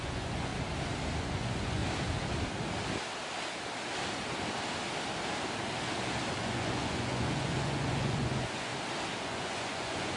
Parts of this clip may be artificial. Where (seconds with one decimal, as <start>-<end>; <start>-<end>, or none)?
0.0-0.5; 1.2-1.8; 6.4-8.7; 9.2-10.2